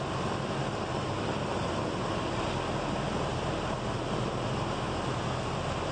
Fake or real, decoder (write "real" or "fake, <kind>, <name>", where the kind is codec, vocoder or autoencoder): real